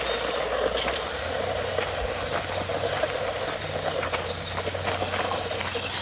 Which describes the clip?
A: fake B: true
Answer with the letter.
B